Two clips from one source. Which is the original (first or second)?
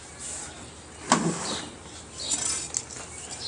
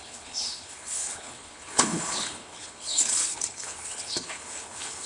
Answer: first